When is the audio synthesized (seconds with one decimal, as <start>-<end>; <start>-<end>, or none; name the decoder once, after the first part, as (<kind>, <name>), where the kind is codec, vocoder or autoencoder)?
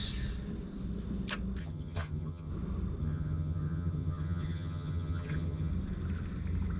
1.6-2.5 (vocoder, HiFi-GAN); 3.0-5.7